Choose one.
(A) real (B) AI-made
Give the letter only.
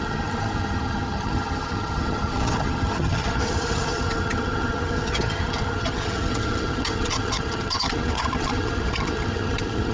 B